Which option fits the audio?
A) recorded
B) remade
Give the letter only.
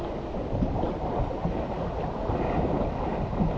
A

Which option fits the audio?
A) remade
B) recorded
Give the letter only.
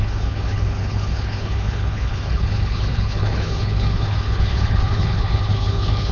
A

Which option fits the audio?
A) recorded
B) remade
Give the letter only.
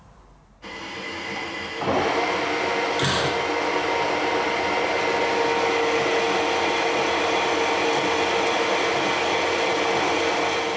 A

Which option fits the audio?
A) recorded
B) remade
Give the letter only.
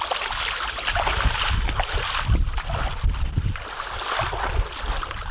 A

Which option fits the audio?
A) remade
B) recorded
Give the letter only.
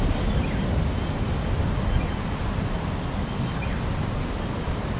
B